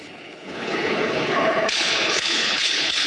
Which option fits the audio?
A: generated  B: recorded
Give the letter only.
A